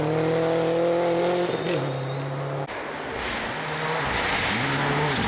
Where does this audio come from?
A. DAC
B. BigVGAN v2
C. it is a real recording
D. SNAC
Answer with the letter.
C